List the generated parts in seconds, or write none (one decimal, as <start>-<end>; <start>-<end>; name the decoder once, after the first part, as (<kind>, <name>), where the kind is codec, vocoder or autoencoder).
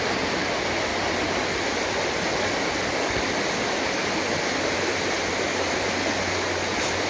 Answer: none